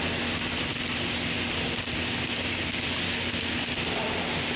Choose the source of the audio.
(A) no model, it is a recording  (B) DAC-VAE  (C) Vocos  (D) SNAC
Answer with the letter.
A